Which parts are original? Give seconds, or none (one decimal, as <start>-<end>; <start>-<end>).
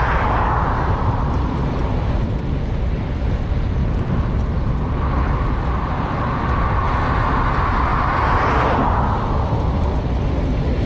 0.0-10.9